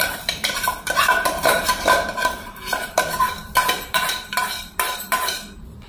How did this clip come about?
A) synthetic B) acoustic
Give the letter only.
A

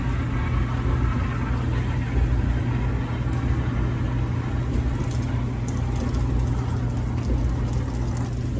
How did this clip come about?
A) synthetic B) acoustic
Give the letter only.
B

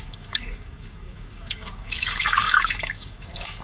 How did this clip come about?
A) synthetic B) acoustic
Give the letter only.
A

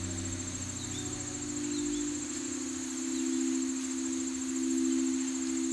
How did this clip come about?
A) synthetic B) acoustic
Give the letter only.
B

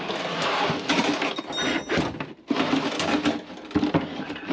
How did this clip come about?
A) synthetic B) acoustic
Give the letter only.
B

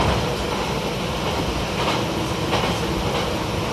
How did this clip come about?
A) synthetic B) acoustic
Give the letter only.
B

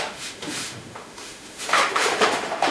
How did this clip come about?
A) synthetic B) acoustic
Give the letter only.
A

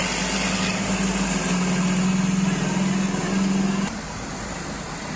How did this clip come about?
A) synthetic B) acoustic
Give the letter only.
B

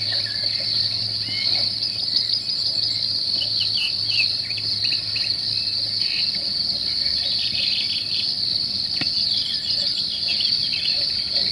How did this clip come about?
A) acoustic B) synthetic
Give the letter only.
A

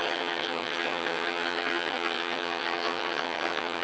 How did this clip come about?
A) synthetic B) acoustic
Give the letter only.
A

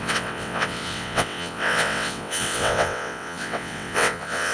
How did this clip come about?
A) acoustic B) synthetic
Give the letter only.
B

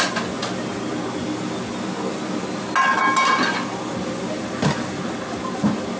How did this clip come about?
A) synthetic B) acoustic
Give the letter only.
B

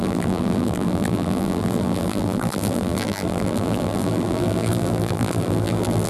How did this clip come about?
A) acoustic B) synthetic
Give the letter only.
B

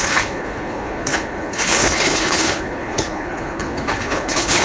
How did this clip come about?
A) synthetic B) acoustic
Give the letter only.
A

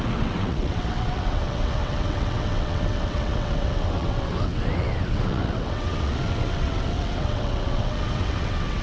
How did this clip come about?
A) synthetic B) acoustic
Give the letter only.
A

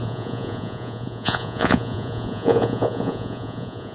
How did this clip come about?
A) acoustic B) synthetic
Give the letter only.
B